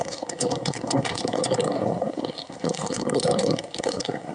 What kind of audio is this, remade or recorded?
remade